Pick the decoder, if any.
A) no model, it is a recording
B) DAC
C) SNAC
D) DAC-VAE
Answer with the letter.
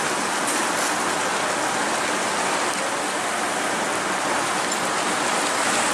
A